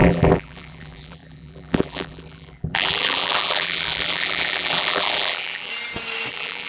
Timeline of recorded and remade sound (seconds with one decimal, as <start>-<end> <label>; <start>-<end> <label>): 0.0-5.7 remade; 5.7-6.3 recorded; 6.3-6.7 remade